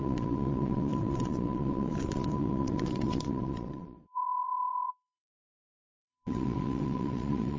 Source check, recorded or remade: remade